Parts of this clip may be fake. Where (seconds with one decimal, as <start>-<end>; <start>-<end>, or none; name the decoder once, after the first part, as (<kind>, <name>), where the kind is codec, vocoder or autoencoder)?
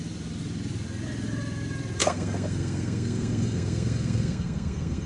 2.0-5.1 (codec, SNAC)